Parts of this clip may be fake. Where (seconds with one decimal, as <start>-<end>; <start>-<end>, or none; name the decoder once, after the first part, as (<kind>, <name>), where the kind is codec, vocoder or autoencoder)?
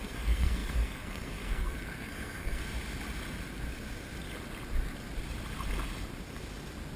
0.0-2.6 (codec, SNAC)